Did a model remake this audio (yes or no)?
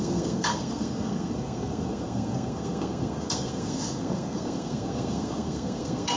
yes